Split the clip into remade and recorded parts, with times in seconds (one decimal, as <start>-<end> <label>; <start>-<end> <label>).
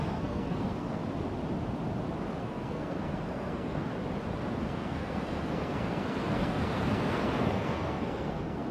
0.0-1.0 remade; 1.0-2.4 recorded; 2.4-3.9 remade; 3.9-4.6 recorded; 4.6-8.7 remade